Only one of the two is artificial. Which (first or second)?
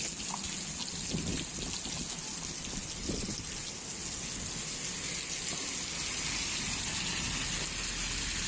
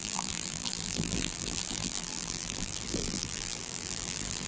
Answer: second